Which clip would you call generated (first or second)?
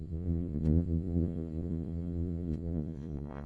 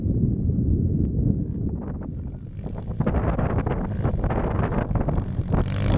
first